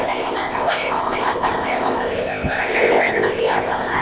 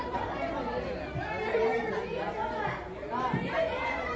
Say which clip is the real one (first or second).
second